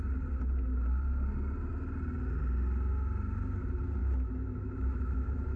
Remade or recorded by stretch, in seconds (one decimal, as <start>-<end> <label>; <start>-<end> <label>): 0.0-4.0 recorded; 4.0-5.6 remade